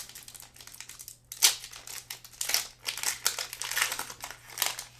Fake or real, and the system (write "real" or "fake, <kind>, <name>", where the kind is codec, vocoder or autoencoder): real